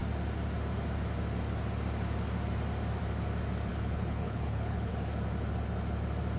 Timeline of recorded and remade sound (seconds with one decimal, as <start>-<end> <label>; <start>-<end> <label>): 0.0-3.7 recorded; 3.7-4.9 remade; 4.9-6.4 recorded